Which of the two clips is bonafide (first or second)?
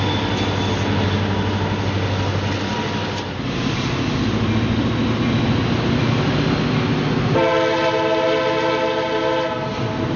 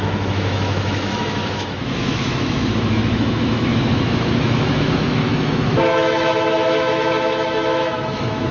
first